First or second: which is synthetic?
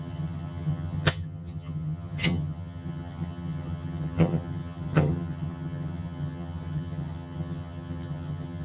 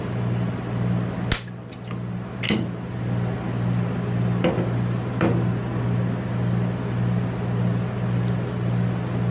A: first